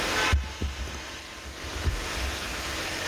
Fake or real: real